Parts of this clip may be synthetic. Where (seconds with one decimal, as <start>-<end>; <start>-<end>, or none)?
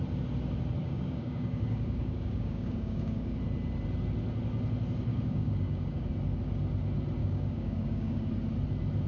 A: 0.8-3.4; 5.1-6.1; 7.2-8.3